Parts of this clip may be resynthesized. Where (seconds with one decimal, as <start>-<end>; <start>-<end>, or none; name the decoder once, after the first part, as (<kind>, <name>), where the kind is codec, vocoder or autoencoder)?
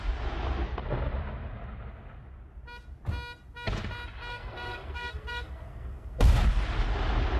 4.3-6.3 (codec, SNAC)